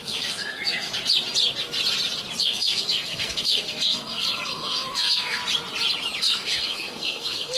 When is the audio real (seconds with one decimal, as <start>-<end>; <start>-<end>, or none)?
0.9-2.4; 5.4-6.2